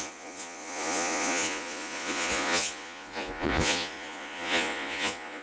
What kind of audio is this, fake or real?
fake